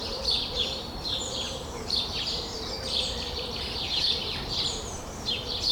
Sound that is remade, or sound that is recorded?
remade